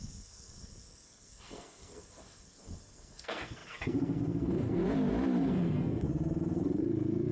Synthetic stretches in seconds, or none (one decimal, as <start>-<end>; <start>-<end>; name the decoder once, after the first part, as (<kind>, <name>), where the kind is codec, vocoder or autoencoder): 0.0-4.8 (codec, SNAC); 5.4-7.3